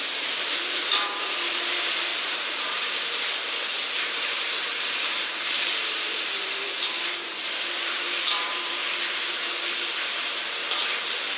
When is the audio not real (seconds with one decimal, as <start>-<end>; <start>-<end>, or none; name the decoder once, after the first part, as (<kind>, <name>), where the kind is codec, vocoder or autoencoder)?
0.0-8.8 (vocoder, BigVGAN v2); 9.4-11.4